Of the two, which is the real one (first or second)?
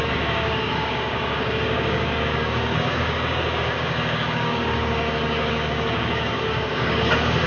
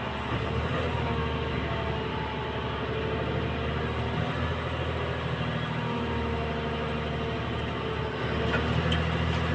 second